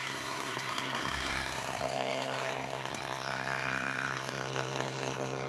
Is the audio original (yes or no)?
no